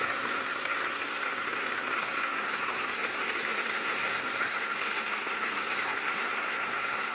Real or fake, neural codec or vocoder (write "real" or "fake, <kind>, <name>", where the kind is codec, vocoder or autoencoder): fake, codec, SNAC